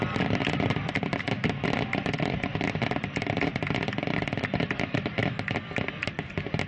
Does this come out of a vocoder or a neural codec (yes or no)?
no